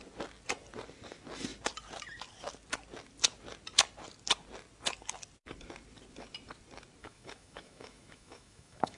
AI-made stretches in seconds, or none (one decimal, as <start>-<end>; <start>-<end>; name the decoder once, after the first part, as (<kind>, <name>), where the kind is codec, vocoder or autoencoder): 7.0-9.0 (autoencoder, DAC-VAE)